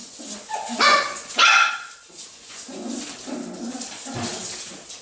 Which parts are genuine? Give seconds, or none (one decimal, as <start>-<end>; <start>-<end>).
1.7-2.3; 3.0-5.0